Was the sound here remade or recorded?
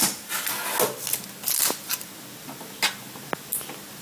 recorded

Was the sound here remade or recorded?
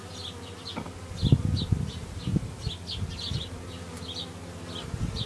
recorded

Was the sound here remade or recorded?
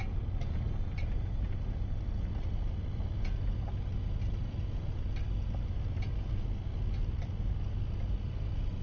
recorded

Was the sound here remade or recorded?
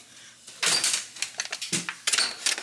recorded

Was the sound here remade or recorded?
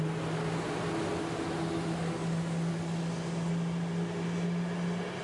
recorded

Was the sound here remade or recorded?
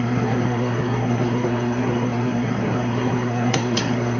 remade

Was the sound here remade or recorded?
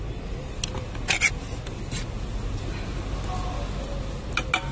recorded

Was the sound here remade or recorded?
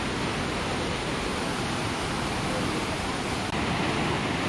recorded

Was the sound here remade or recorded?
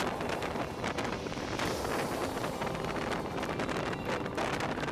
recorded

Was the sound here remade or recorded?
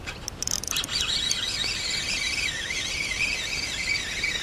recorded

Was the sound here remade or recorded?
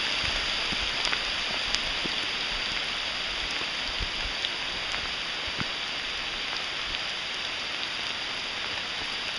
recorded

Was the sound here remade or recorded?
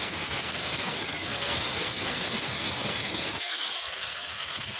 remade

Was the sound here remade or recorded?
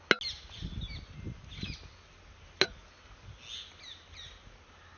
recorded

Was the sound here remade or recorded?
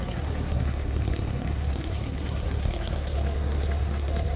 remade